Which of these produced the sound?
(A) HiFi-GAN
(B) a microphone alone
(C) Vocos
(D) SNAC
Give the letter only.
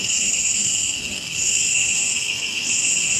D